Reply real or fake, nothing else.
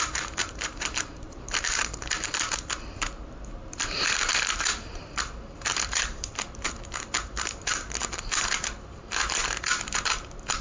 fake